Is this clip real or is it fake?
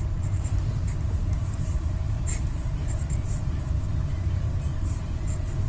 fake